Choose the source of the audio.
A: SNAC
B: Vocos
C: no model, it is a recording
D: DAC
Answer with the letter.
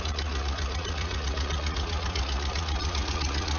B